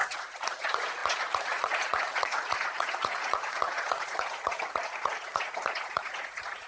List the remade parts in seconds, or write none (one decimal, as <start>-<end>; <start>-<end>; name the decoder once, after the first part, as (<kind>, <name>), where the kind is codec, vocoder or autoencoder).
0.0-6.7 (vocoder, Vocos)